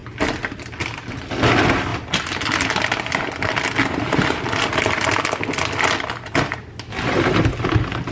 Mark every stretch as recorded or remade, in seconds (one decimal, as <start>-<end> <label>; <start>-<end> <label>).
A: 0.0-8.1 recorded